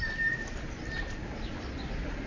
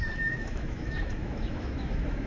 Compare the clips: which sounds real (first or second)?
first